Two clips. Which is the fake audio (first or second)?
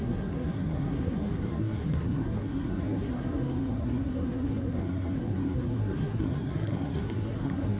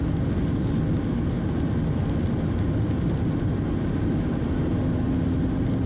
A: first